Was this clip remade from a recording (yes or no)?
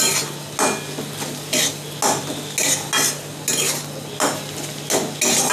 no